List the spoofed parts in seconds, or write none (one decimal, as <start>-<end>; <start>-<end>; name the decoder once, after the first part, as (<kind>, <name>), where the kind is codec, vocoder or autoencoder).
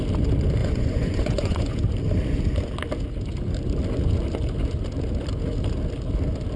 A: 0.6-1.8 (vocoder, Vocos)